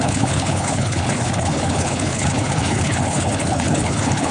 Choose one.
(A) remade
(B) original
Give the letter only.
A